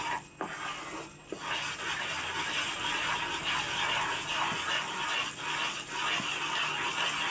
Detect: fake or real real